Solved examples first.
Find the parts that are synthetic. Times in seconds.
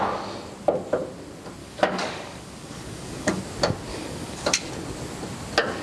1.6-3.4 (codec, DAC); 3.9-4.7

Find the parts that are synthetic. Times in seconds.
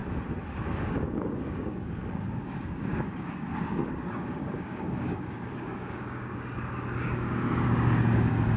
0.5-8.6 (codec, DAC)